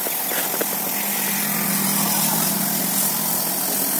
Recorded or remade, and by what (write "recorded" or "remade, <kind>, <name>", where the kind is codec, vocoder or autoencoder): recorded